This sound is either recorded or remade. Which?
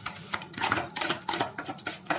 remade